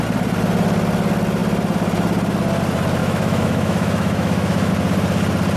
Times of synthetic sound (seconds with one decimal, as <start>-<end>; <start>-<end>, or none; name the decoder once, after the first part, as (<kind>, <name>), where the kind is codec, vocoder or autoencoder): 3.0-4.7 (autoencoder, DAC-VAE)